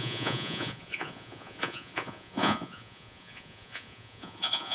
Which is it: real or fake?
fake